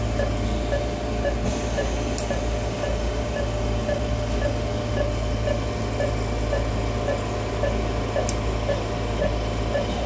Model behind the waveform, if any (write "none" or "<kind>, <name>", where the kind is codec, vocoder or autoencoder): none